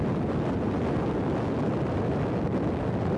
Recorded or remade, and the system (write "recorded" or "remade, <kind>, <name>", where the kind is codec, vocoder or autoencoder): recorded